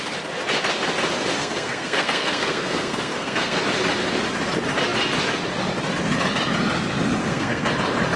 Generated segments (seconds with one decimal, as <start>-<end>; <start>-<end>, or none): 1.4-3.6; 7.2-7.7